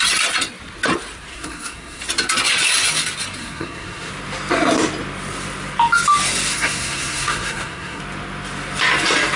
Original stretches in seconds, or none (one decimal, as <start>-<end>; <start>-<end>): 0.0-1.3; 2.0-3.4; 4.1-6.5; 8.0-9.4